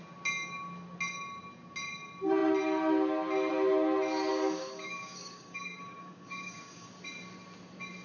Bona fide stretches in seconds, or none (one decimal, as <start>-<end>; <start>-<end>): 0.0-4.3; 6.9-8.0